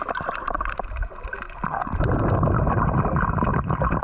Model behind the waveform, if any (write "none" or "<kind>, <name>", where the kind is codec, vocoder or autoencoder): none